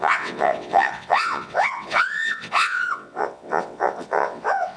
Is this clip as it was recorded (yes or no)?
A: no